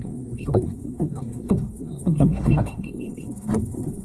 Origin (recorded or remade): remade